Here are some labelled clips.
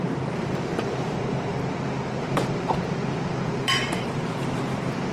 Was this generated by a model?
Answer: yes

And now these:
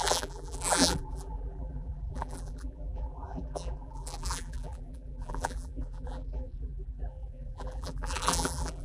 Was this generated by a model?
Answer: yes